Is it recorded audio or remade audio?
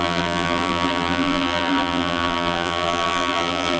remade